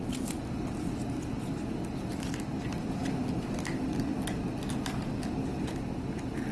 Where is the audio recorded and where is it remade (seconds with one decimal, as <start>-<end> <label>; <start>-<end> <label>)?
0.0-3.0 recorded; 3.0-3.9 remade; 3.9-6.5 recorded